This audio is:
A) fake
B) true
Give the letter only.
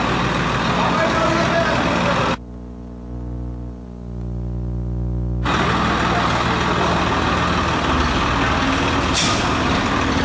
B